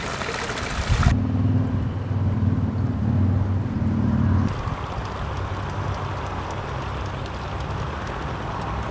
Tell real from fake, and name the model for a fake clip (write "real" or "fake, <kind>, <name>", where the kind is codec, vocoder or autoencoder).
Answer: real